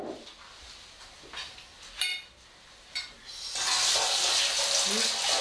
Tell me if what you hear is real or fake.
real